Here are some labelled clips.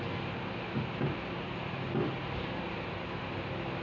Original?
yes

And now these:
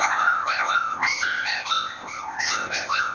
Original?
no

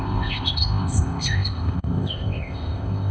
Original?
no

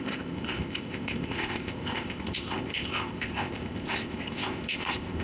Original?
no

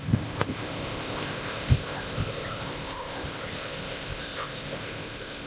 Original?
no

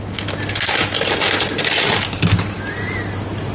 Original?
yes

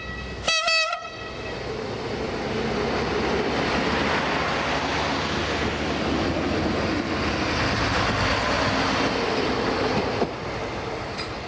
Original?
yes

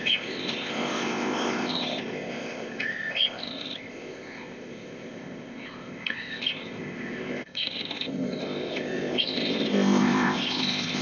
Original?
no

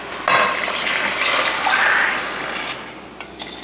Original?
yes